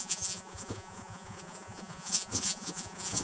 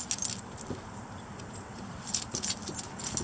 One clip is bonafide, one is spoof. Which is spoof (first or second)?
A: first